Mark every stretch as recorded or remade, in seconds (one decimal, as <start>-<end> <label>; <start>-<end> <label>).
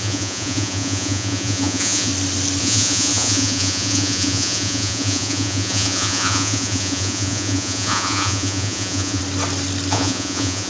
0.0-2.1 remade; 2.1-2.6 recorded; 2.6-9.2 remade; 9.2-9.9 recorded; 9.9-10.7 remade